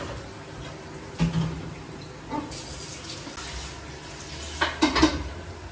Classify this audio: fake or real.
real